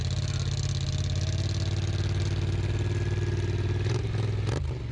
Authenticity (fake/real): real